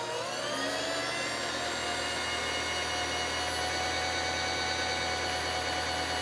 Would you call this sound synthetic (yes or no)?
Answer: no